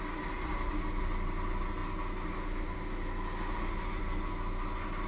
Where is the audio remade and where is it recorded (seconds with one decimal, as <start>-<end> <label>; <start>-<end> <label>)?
0.0-5.1 recorded